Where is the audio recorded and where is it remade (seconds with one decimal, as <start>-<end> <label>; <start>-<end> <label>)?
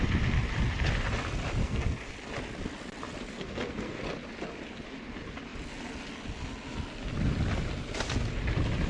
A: 0.0-1.6 recorded; 1.6-2.1 remade; 2.1-3.3 recorded; 3.3-4.0 remade; 4.0-8.9 recorded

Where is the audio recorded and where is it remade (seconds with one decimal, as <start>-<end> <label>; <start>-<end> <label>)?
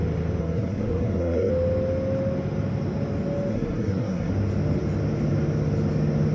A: 0.0-0.4 recorded; 0.4-1.5 remade; 1.5-3.5 recorded; 3.5-4.3 remade; 4.3-6.3 recorded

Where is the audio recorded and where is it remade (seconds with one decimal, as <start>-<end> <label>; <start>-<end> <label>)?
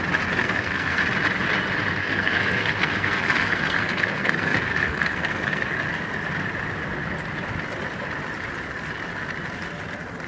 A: 0.0-0.4 recorded; 0.4-1.0 remade; 1.0-2.0 recorded; 2.0-5.7 remade; 5.7-10.3 recorded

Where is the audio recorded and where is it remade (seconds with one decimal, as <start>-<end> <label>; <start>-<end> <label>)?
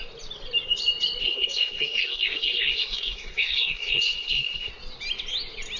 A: 0.0-1.2 recorded; 1.2-4.7 remade; 4.7-5.8 recorded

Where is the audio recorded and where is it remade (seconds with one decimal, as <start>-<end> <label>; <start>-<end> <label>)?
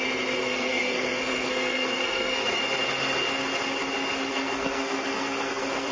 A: 0.0-0.4 recorded; 0.4-2.6 remade; 2.6-4.3 recorded; 4.3-5.9 remade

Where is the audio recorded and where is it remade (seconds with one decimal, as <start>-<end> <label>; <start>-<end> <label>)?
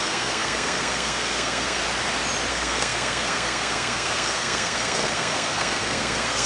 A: 0.0-1.8 remade; 1.8-2.5 recorded; 2.5-6.5 remade